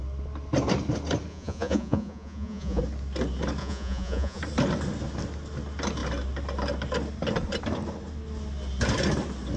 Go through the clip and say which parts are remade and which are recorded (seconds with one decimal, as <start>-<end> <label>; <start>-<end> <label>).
0.0-1.3 recorded; 1.3-2.8 remade; 2.8-3.6 recorded; 3.6-4.4 remade; 4.4-9.6 recorded